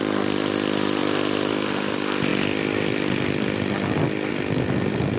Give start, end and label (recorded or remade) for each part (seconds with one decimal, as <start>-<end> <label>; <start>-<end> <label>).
0.0-1.0 remade; 1.0-1.5 recorded; 1.5-5.2 remade